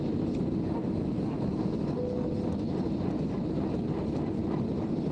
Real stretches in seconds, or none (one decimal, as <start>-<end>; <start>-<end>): 0.0-0.8; 1.8-5.1